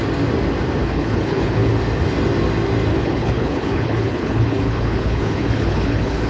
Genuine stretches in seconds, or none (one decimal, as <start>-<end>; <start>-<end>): 0.0-0.8; 1.7-2.9

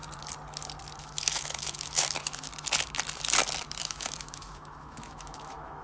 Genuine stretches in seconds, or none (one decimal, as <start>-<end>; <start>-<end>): 0.0-1.0; 2.5-3.8

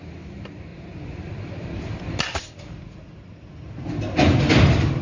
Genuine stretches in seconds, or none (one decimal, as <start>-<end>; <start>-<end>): 0.0-0.7; 3.5-5.0

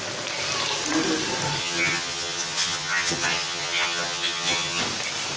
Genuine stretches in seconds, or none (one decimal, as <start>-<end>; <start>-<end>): 0.0-1.6; 4.8-5.4

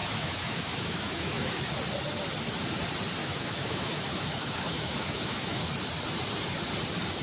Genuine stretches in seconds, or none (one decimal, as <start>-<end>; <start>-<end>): 1.7-3.2; 5.7-7.2

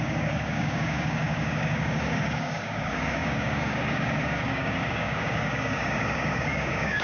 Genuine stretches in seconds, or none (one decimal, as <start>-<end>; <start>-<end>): none